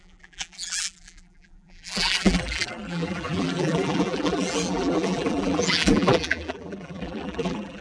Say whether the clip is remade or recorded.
remade